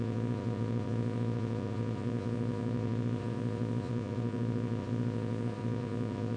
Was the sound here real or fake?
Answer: fake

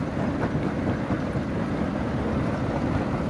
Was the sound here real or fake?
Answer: real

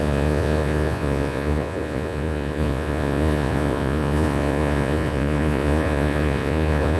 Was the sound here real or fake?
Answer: fake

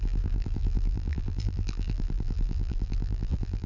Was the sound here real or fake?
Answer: fake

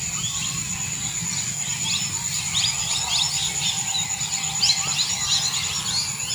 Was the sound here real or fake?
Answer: real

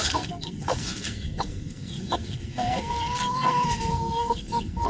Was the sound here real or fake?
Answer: fake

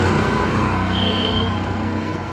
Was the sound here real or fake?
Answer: fake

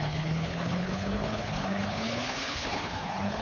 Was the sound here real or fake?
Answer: fake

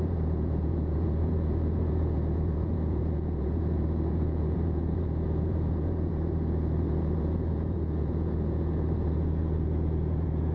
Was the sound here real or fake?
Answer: fake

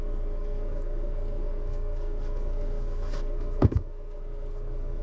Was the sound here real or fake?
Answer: fake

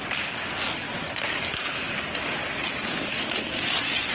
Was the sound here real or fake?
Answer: real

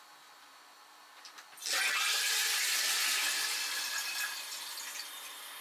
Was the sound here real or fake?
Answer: real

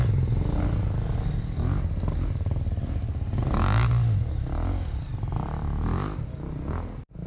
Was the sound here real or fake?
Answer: real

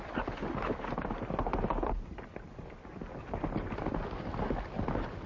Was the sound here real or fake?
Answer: real